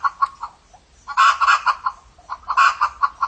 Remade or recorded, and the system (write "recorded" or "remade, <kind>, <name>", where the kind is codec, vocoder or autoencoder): recorded